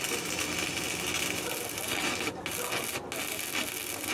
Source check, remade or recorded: recorded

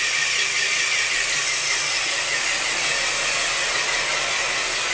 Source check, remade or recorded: recorded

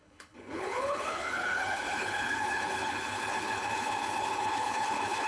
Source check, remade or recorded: remade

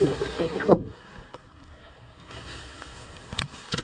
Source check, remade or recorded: remade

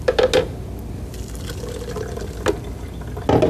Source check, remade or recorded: recorded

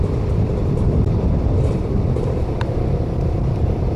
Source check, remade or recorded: recorded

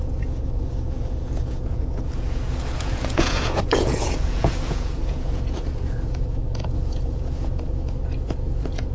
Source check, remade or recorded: remade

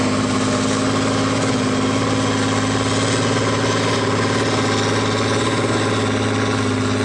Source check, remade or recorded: recorded